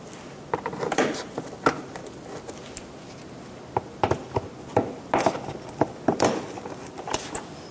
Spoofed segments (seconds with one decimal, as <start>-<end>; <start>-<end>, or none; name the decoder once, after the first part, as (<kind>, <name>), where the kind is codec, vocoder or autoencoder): none